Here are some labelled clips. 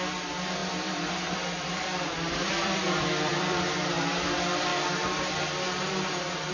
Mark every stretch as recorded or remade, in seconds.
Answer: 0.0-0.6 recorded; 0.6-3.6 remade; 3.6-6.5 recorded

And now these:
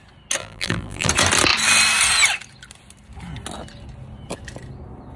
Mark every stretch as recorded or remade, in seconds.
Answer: 0.0-0.4 recorded; 0.4-1.1 remade; 1.1-5.2 recorded

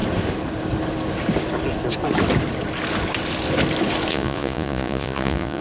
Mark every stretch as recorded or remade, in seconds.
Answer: 0.0-4.1 recorded; 4.1-5.6 remade

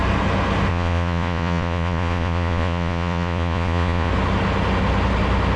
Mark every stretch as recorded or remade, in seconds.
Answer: 0.0-0.7 recorded; 0.7-4.1 remade; 4.1-5.6 recorded

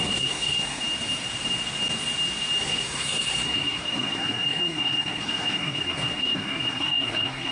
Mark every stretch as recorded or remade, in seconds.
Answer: 0.0-0.8 remade; 0.8-2.6 recorded; 2.6-7.5 remade

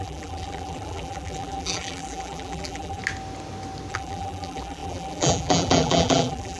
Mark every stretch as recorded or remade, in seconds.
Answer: 0.0-3.0 remade; 3.0-3.9 recorded; 3.9-6.6 remade

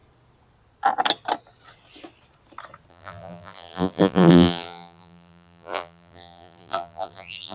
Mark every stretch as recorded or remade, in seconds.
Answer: 0.0-2.9 recorded; 2.9-7.5 remade

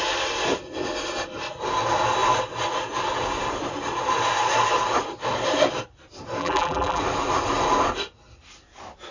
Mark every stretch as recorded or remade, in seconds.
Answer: 0.0-6.4 recorded; 6.4-7.0 remade; 7.0-9.1 recorded